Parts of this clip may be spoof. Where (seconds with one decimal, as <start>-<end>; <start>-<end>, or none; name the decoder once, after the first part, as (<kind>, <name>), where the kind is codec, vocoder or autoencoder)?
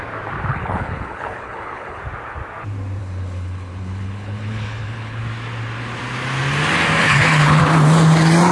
0.5-2.0 (codec, HILCodec); 3.0-5.2; 7.0-7.6